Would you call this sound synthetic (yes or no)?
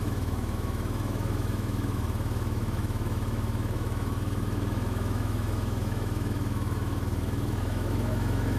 yes